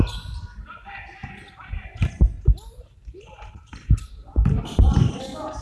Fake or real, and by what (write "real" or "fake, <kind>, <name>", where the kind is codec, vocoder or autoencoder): real